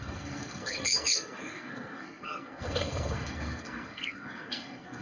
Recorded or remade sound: remade